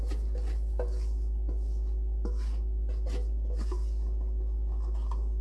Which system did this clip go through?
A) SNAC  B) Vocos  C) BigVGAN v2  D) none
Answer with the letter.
D